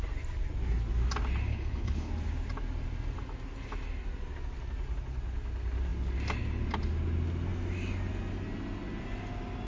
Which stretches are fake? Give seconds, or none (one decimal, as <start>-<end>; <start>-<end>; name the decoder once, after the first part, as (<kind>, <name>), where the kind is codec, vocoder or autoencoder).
1.5-2.1 (codec, HILCodec)